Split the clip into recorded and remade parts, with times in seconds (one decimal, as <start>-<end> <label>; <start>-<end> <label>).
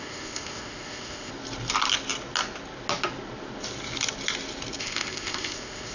0.0-1.3 remade; 1.3-4.8 recorded; 4.8-5.9 remade